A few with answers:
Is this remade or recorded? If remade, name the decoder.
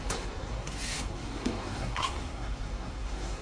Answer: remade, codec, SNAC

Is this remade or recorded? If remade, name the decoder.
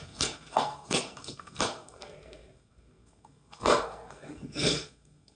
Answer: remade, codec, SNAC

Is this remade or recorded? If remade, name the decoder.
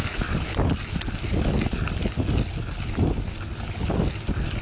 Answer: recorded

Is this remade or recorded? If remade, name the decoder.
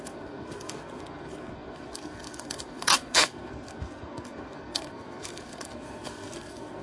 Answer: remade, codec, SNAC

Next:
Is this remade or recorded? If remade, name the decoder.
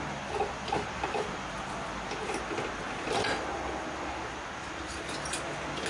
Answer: recorded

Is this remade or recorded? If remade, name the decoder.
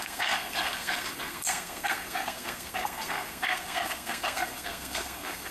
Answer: remade, codec, SNAC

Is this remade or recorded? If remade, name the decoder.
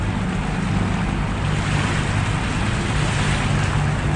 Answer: recorded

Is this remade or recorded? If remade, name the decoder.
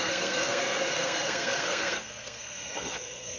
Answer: remade, codec, SNAC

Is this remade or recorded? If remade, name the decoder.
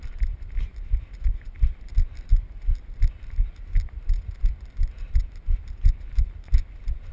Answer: recorded